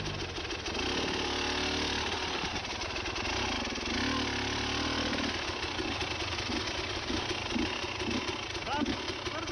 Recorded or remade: recorded